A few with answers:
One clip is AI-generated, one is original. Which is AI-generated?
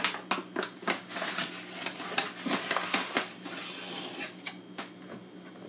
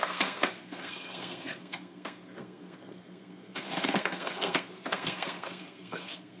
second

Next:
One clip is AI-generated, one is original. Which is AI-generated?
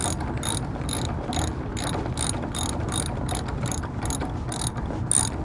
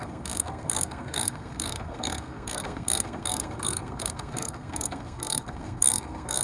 second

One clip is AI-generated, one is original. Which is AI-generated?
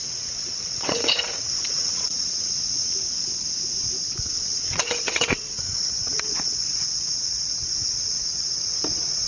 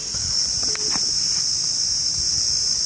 first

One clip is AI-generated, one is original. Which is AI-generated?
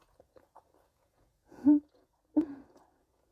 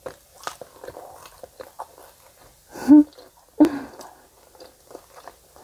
first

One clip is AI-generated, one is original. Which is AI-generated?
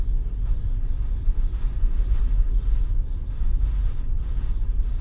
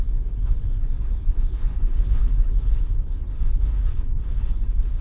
second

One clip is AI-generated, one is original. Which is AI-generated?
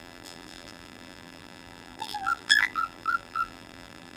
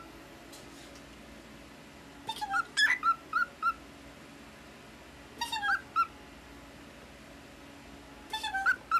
first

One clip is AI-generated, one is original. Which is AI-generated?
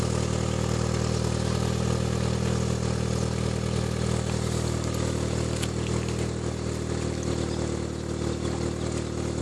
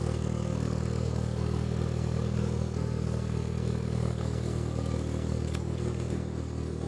second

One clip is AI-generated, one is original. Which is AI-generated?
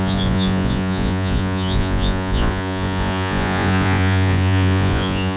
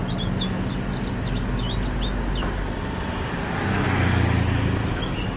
first